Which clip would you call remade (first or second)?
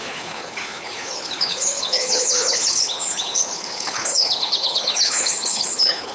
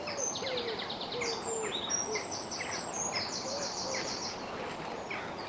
first